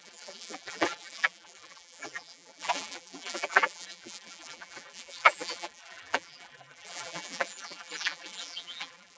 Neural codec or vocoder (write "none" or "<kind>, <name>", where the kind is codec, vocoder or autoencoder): vocoder, BigVGAN v2